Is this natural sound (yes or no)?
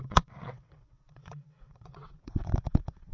no